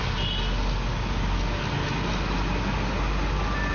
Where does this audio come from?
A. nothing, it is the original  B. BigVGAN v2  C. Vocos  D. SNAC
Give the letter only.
A